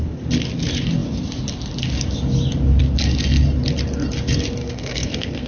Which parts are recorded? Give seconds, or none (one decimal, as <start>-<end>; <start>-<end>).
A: 0.0-4.6

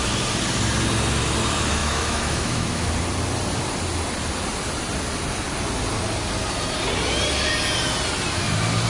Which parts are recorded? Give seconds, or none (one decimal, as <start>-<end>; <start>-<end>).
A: 0.0-1.8; 2.9-8.9